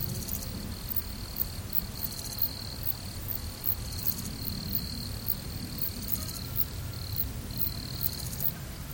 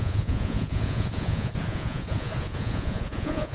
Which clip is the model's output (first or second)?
second